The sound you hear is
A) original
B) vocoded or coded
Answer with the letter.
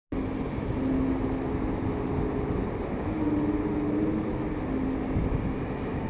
A